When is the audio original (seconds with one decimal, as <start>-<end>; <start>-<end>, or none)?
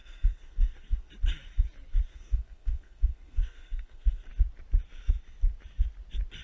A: 1.1-2.1; 4.3-6.4